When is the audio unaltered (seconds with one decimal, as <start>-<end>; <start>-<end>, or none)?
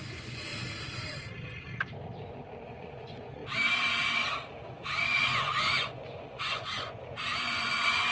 0.5-2.7; 3.4-5.0